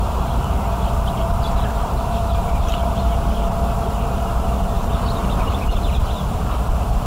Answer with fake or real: fake